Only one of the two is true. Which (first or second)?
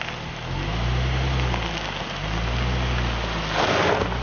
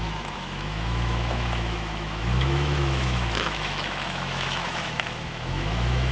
first